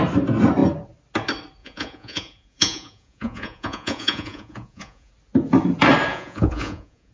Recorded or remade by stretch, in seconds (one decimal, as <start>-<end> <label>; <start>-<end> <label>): 0.0-1.6 recorded; 1.6-5.1 remade; 5.1-6.1 recorded; 6.1-7.1 remade